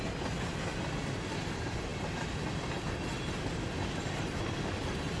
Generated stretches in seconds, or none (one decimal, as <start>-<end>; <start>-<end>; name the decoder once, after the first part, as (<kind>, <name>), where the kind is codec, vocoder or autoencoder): none